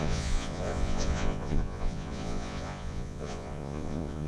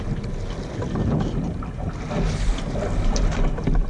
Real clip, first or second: second